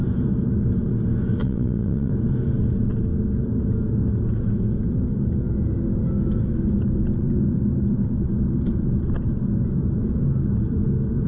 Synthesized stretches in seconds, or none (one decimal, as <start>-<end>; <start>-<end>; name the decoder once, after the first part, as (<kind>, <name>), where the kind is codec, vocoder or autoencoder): 1.4-2.1 (vocoder, WaveNeXt)